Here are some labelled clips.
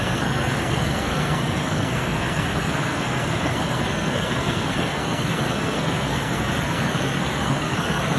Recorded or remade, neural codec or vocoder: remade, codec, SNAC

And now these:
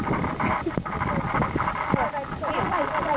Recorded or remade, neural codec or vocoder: recorded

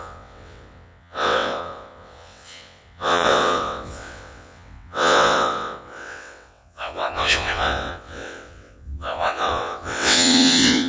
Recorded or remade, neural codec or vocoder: remade, vocoder, WaveNeXt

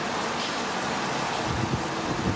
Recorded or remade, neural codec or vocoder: recorded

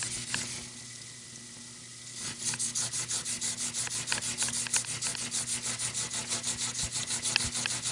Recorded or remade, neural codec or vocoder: recorded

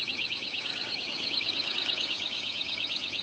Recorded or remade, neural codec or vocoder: remade, codec, DAC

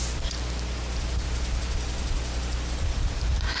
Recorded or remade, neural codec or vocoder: recorded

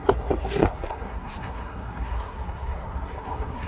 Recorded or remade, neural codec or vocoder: remade, codec, SNAC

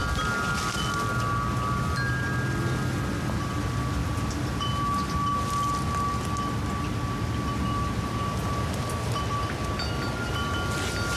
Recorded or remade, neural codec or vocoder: recorded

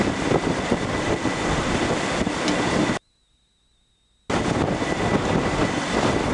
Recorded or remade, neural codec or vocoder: recorded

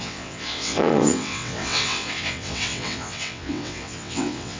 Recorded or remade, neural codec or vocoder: remade, vocoder, WaveNeXt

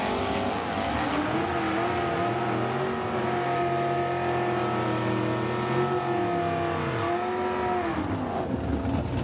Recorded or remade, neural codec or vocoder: recorded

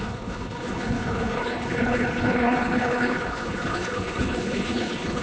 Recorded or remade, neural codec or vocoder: remade, codec, HILCodec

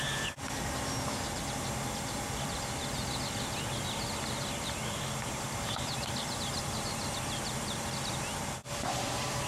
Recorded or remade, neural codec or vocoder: remade, vocoder, BigVGAN v2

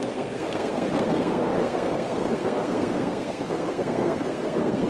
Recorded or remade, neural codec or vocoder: remade, codec, SNAC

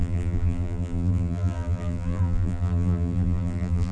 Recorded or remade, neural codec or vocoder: remade, vocoder, BigVGAN v2